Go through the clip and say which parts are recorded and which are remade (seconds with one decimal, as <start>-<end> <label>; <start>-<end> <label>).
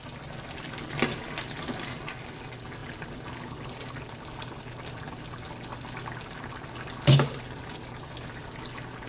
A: 0.0-9.1 recorded